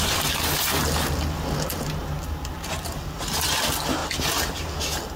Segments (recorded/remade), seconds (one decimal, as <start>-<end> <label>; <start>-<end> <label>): 0.0-5.2 recorded

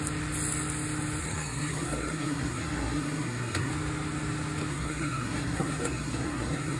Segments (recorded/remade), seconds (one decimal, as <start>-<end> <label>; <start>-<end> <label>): 0.0-1.2 recorded; 1.2-3.7 remade; 3.7-4.7 recorded; 4.7-6.8 remade

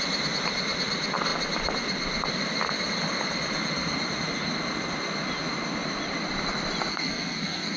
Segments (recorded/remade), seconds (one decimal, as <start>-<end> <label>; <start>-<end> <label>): 0.0-6.9 recorded; 6.9-7.8 remade